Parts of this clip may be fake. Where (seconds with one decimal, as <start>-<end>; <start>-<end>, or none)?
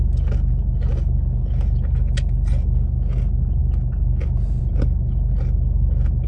none